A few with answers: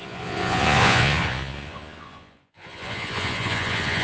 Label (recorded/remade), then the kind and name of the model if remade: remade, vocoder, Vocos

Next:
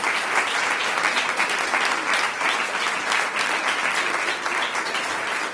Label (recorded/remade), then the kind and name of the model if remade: recorded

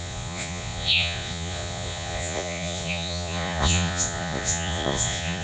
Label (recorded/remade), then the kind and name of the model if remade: remade, vocoder, Vocos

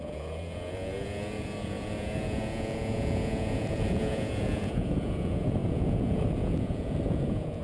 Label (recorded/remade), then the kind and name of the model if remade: remade, vocoder, Vocos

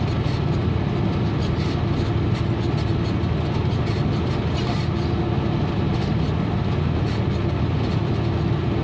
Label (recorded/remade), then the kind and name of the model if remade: recorded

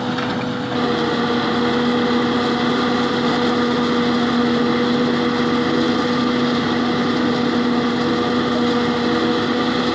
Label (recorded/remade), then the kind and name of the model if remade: recorded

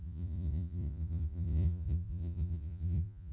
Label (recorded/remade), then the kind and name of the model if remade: remade, vocoder, Vocos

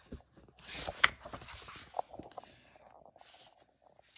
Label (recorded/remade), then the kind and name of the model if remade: recorded